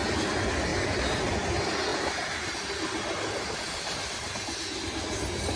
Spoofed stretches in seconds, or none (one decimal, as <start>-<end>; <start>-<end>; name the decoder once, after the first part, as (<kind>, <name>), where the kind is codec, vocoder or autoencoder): 1.9-4.6 (vocoder, BigVGAN v2)